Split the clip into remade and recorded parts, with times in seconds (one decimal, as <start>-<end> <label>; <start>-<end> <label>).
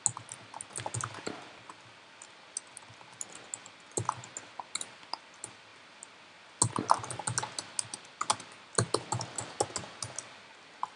0.0-11.0 recorded